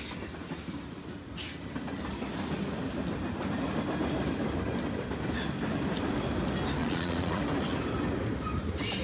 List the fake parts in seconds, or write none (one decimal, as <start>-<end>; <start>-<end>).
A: 6.8-7.4

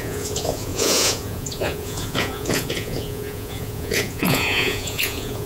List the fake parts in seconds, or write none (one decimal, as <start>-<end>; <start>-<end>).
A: 0.0-5.5

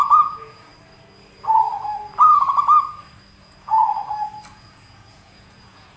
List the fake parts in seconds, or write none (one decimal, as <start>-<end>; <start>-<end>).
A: 0.0-0.7; 3.4-3.9; 4.5-6.0

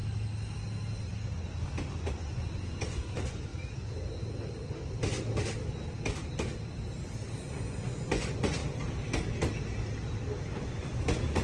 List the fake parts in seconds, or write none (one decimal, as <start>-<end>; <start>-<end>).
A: 2.0-3.5; 7.4-8.6; 10.6-11.4

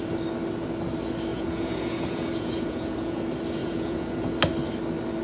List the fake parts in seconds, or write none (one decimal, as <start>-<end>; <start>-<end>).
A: 1.3-3.2; 3.6-4.3

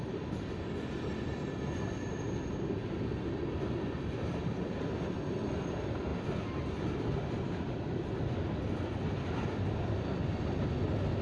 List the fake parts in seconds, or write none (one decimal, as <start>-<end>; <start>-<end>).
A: none

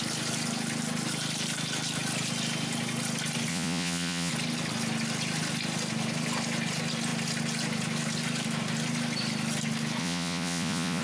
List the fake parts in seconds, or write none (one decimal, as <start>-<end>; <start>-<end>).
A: 3.5-4.3; 10.0-11.0